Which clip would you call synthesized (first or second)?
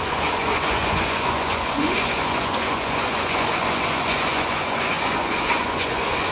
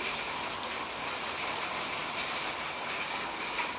first